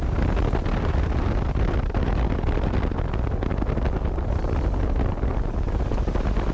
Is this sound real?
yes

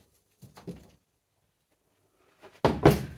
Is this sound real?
yes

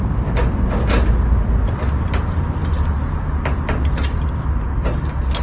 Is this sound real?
yes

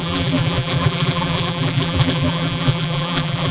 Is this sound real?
no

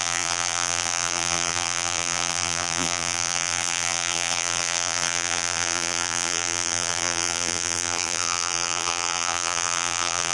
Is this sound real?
no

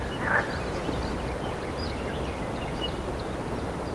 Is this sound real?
no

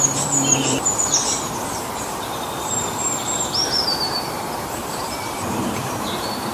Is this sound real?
no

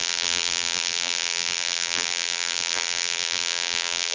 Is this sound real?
no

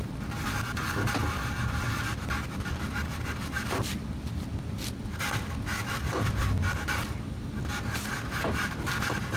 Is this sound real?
yes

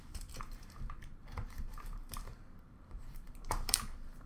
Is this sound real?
no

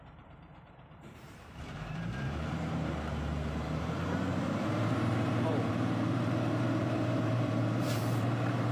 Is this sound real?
no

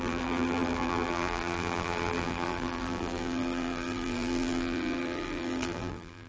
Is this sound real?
no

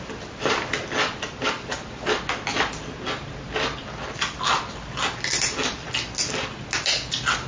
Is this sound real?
yes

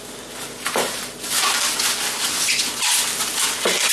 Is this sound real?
yes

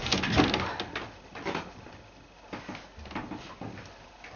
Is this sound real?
yes